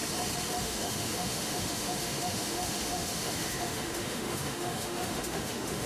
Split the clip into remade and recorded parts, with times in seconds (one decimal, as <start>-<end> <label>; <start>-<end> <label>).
0.0-0.6 recorded; 0.6-5.9 remade